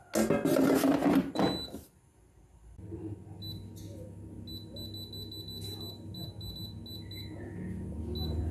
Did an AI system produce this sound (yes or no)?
no